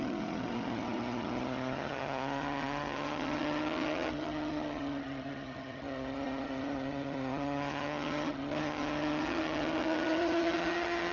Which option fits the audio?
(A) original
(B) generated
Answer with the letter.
B